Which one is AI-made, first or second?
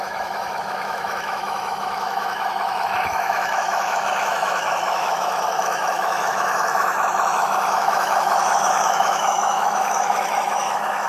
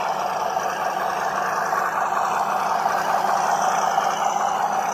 first